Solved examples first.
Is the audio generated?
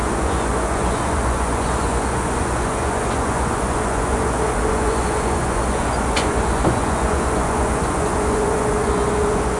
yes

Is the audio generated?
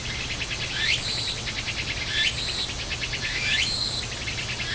no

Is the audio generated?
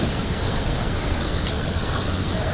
yes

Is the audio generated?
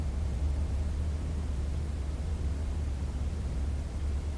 yes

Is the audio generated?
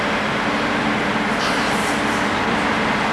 no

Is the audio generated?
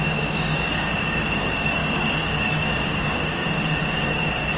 yes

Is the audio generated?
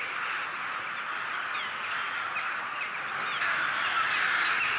no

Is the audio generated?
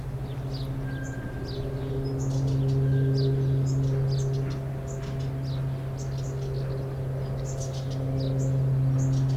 no